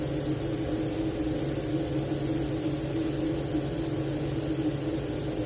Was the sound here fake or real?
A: real